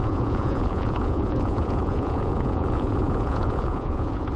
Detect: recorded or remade remade